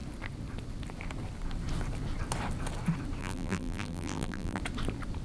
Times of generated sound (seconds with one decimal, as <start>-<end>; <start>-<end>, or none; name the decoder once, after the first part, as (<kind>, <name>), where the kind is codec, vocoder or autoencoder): 3.2-4.6 (vocoder, BigVGAN v2)